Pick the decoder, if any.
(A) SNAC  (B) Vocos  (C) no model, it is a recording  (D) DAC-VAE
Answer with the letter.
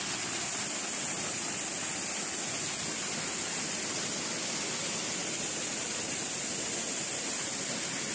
C